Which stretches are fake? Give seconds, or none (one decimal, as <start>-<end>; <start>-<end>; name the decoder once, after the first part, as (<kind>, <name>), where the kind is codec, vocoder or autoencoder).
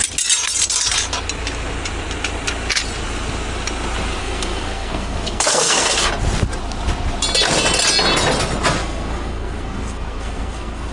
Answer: 4.2-6.1 (codec, SNAC); 8.8-10.9